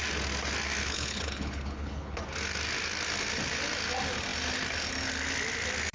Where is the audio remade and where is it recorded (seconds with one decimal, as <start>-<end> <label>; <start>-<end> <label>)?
0.0-0.8 recorded; 0.8-2.2 remade; 2.2-5.9 recorded